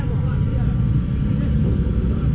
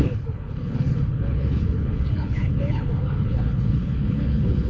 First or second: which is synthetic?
second